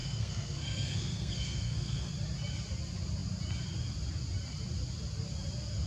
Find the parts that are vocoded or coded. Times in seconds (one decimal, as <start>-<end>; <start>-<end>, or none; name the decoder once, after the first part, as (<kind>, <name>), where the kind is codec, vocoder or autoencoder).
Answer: 0.0-2.1 (codec, SNAC)